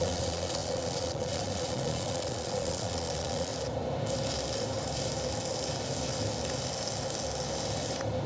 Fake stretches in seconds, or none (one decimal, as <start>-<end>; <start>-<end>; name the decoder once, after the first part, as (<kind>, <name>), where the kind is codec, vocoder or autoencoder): 0.0-3.5 (vocoder, Vocos)